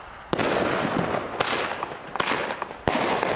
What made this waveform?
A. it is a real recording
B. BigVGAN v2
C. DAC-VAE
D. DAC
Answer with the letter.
A